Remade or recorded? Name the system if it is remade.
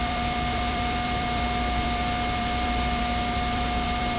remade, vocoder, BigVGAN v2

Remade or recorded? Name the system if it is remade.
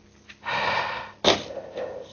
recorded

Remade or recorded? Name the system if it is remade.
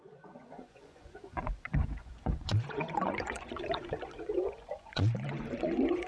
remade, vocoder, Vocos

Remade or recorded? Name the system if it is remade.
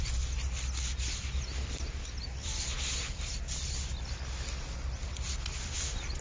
recorded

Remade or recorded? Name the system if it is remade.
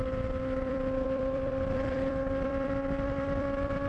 remade, vocoder, BigVGAN v2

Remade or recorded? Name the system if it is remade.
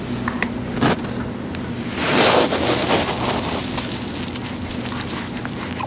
recorded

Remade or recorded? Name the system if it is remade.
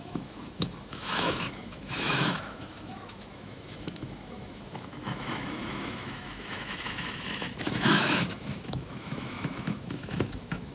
remade, autoencoder, DAC-VAE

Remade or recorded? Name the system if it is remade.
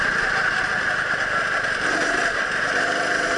recorded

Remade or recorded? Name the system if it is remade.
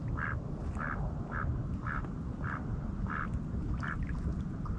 recorded